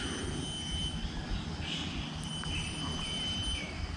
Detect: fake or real real